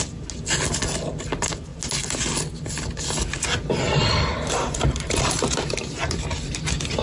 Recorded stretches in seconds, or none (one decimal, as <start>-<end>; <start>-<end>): 0.0-4.3; 5.3-7.0